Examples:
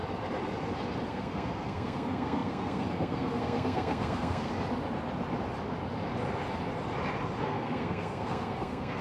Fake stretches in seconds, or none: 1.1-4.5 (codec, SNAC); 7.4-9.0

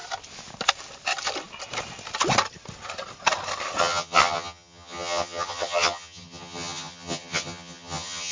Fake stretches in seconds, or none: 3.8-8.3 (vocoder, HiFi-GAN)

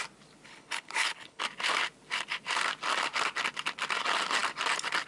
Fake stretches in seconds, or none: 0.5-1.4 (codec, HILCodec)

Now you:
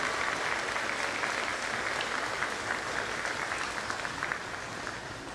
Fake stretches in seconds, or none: none

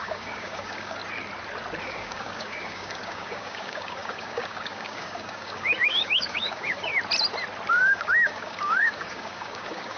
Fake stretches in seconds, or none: 0.0-1.0 (codec, DAC); 1.8-6.9; 7.7-10.0

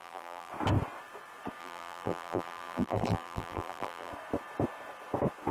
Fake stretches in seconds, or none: 0.0-0.5 (vocoder, BigVGAN v2); 1.6-4.1